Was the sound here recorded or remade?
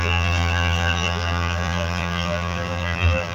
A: remade